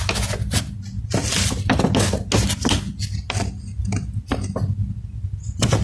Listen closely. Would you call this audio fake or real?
real